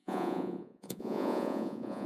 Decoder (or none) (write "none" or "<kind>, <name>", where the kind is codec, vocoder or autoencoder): vocoder, Vocos